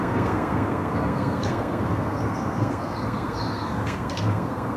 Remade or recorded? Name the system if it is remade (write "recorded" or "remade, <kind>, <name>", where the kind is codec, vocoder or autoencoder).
remade, codec, SNAC